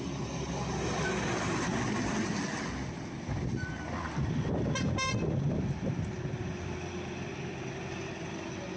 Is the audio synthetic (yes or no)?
no